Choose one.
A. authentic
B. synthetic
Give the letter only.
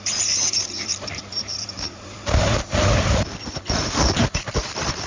B